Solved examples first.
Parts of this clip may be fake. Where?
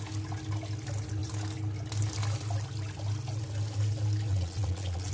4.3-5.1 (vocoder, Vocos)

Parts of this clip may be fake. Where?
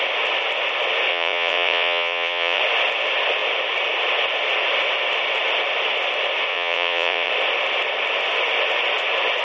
1.1-2.6 (vocoder, Vocos); 6.5-7.3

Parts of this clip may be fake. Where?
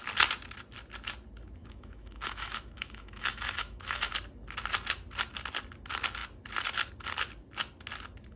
1.6-4.1 (autoencoder, DAC-VAE)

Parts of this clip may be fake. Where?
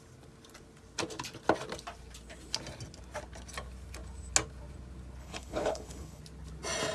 5.2-6.2 (codec, HILCodec)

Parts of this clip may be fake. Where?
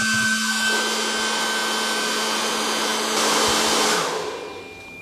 none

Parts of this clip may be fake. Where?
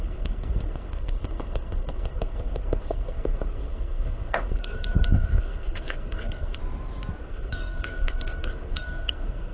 0.0-6.6 (codec, SNAC); 7.2-9.5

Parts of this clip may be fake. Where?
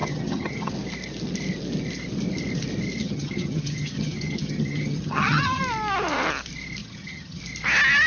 0.0-0.7 (vocoder, HiFi-GAN); 3.0-5.6; 6.8-7.4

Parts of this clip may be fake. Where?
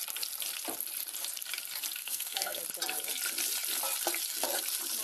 2.0-2.6 (codec, SNAC)